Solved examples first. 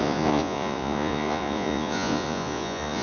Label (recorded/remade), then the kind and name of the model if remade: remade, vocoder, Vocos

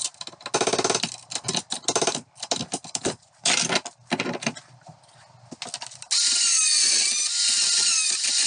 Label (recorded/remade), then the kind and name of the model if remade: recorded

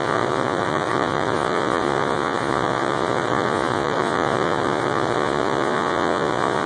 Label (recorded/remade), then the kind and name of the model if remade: remade, vocoder, Vocos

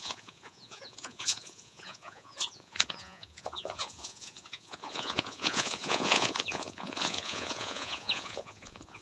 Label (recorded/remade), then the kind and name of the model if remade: remade, vocoder, Vocos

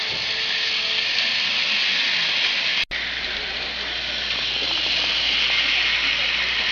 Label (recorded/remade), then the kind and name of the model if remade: recorded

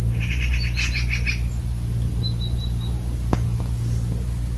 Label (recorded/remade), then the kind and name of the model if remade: recorded